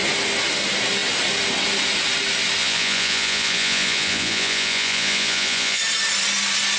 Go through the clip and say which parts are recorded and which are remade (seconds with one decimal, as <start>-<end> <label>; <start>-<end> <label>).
0.0-2.6 recorded; 2.6-5.8 remade; 5.8-6.8 recorded